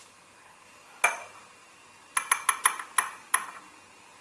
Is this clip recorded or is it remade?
recorded